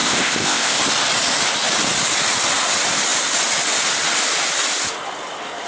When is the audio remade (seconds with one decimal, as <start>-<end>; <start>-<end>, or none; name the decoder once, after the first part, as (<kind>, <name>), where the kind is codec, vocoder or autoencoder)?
0.0-0.8 (codec, ZipCodec)